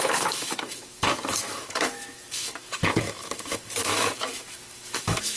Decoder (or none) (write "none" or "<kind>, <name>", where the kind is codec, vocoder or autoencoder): autoencoder, DAC-VAE